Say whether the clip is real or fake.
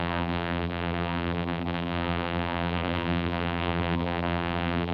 fake